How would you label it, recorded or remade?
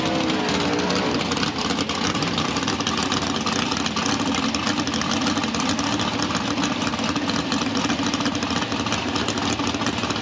recorded